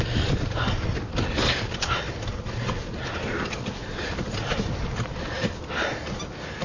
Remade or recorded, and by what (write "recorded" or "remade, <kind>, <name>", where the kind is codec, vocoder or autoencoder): recorded